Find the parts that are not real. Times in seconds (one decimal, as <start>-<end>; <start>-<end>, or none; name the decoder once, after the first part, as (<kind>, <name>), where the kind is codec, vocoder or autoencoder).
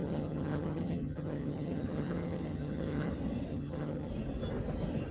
0.0-3.1 (vocoder, HiFi-GAN); 3.5-4.1